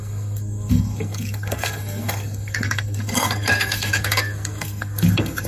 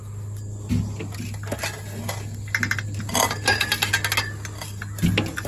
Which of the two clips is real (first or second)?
second